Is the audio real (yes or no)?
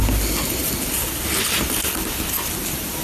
yes